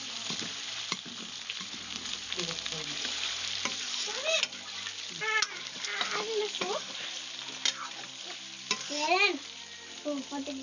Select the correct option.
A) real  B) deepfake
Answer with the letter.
B